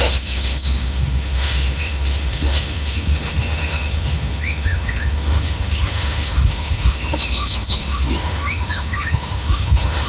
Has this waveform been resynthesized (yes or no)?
yes